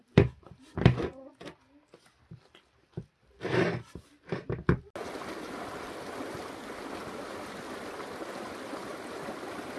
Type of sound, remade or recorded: recorded